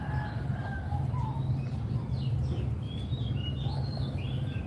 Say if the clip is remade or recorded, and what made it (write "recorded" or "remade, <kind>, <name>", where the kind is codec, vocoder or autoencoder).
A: recorded